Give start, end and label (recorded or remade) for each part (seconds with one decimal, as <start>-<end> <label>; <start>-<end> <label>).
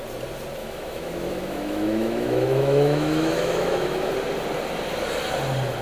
0.0-0.6 recorded; 0.6-4.1 remade; 4.1-5.8 recorded